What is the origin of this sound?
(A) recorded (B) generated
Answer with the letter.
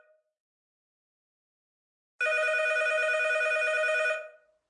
A